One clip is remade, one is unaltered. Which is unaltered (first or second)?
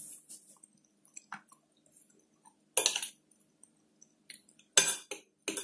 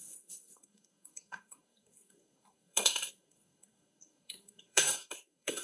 first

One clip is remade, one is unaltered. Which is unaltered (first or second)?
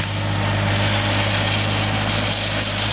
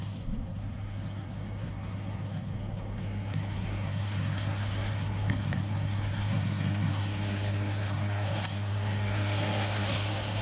first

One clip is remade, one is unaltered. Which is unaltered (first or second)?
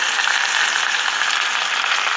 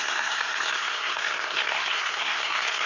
first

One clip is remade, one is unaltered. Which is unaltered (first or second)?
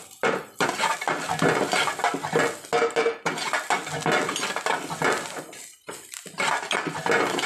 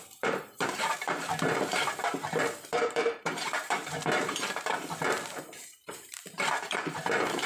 first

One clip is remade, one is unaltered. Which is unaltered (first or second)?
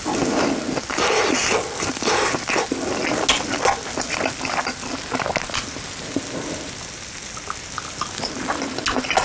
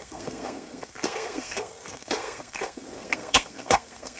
first